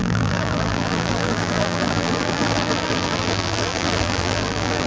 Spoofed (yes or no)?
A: yes